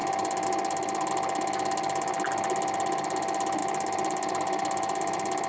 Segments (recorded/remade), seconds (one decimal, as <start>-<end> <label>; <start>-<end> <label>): 0.0-5.5 recorded